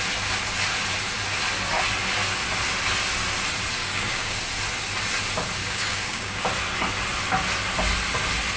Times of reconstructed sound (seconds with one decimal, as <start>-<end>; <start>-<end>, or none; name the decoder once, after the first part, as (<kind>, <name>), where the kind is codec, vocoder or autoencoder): 3.8-4.4 (codec, DAC); 5.6-6.4